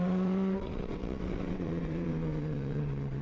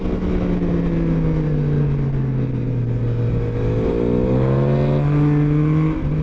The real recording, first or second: second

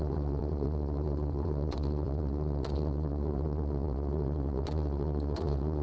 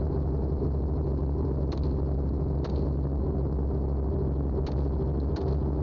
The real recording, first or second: second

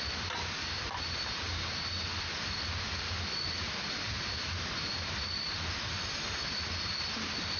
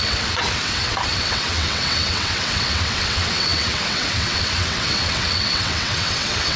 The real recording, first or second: first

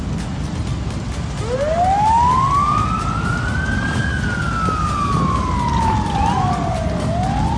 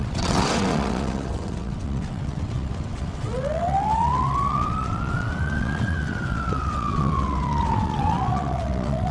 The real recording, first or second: first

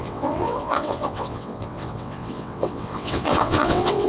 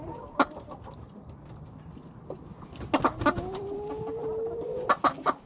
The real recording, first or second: second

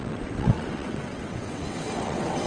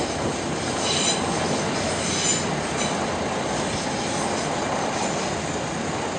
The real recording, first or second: second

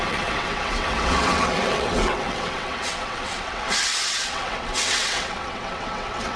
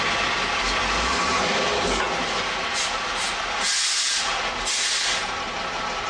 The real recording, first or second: second